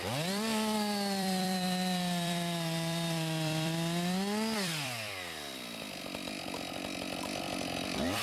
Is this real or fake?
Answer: fake